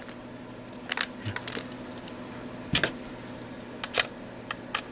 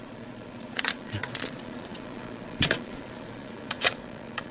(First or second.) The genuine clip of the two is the first